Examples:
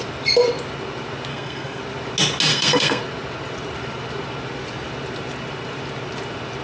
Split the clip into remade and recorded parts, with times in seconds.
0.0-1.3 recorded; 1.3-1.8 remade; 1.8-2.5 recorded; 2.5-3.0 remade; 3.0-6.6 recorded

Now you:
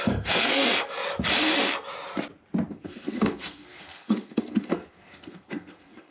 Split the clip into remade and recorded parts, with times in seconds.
0.0-0.6 remade; 0.6-2.7 recorded; 2.7-6.1 remade

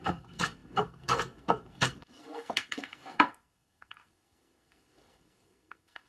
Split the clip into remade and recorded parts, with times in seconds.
0.0-6.1 remade

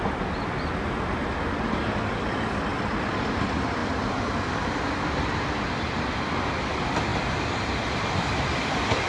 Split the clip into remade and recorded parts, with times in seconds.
0.0-9.1 recorded

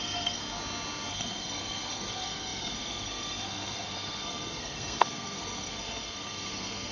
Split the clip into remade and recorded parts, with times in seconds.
0.0-0.4 remade; 0.4-1.1 recorded; 1.1-6.9 remade

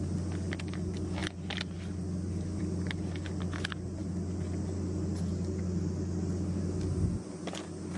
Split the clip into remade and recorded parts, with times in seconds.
0.0-8.0 recorded

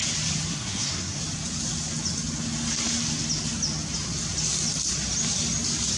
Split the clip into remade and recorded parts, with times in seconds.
0.0-0.5 recorded; 0.5-1.2 remade; 1.2-6.0 recorded